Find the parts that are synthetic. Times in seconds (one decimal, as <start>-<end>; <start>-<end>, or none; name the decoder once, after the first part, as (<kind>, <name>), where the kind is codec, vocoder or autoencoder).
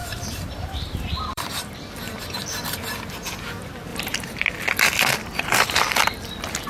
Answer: 0.0-2.2 (vocoder, BigVGAN v2); 3.9-4.4; 5.2-5.8